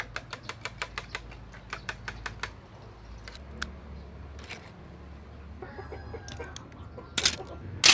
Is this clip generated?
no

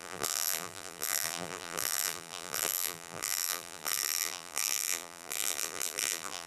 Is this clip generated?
yes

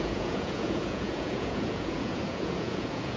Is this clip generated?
yes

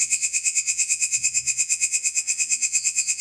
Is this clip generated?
yes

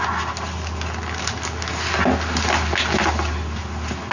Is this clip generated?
no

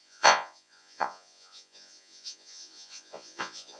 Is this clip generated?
yes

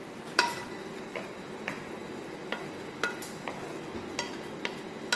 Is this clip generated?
no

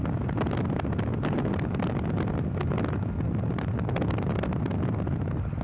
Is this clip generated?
no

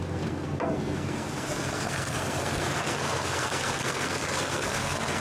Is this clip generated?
yes